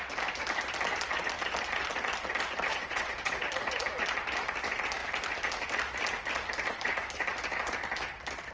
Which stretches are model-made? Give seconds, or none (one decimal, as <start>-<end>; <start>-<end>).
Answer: 2.7-3.3